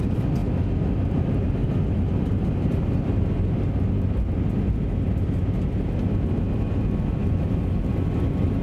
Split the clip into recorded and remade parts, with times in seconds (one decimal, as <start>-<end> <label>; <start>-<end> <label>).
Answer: 0.0-8.6 recorded